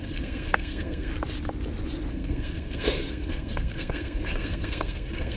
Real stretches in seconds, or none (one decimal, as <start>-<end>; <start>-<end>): 1.1-2.1